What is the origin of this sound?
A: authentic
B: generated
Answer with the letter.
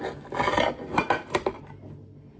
A